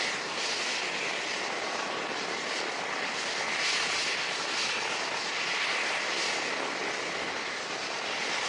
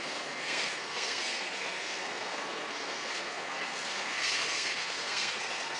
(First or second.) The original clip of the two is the first